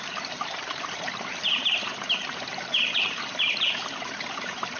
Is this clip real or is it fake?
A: fake